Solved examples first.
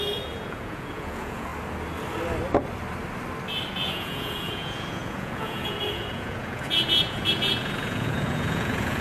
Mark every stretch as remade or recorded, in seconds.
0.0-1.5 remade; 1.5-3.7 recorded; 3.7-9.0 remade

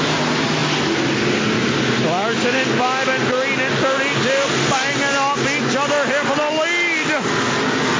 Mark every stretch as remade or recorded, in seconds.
0.0-8.0 recorded

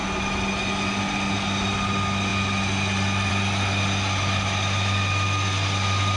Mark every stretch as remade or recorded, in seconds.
0.0-6.2 recorded

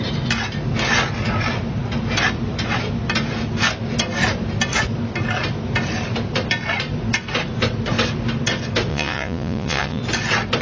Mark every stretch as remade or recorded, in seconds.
0.0-8.9 recorded; 8.9-10.0 remade; 10.0-10.6 recorded

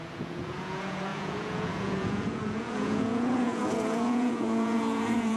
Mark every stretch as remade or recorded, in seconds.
0.0-5.4 remade

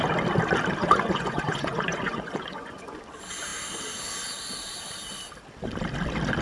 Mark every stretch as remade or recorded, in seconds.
0.0-0.8 recorded; 0.8-3.0 remade; 3.0-6.4 recorded

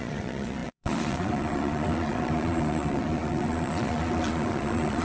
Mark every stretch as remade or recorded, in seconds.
0.0-5.0 remade

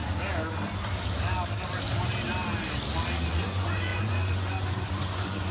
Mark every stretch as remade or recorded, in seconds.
0.0-3.3 recorded; 3.3-5.5 remade